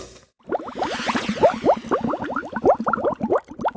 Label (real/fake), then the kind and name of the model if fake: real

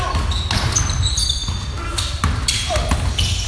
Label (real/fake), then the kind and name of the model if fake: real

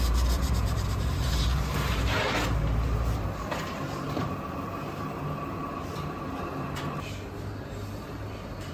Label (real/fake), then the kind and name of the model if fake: fake, vocoder, BigVGAN v2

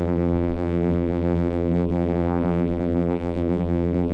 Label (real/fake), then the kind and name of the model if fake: fake, vocoder, BigVGAN v2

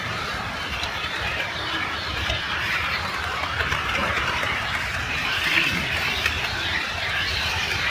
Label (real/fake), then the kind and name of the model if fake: fake, vocoder, BigVGAN v2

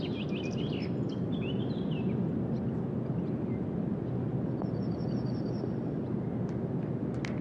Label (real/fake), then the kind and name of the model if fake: real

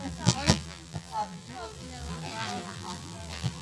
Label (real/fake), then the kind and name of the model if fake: fake, vocoder, BigVGAN v2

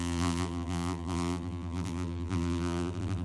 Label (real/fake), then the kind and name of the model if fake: fake, vocoder, BigVGAN v2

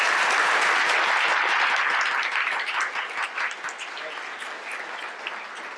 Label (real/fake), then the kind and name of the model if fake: real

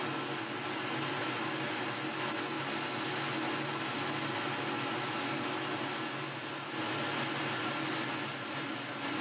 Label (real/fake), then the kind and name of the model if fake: real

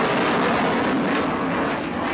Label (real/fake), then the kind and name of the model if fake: real